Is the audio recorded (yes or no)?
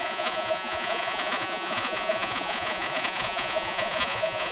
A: no